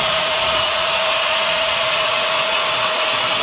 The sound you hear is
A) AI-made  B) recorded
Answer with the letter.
A